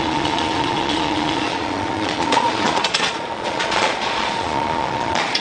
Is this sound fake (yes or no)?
yes